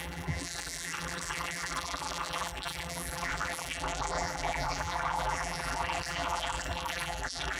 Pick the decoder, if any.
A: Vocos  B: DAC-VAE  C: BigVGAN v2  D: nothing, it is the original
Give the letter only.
C